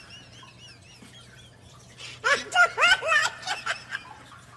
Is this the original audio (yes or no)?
yes